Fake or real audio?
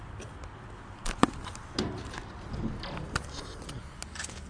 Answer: real